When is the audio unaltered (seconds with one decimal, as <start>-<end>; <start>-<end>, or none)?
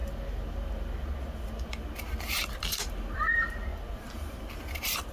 0.0-2.2; 3.7-5.1